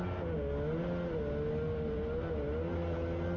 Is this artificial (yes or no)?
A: no